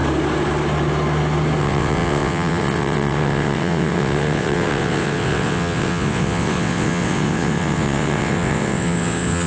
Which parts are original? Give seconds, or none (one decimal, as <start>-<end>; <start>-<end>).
0.0-1.6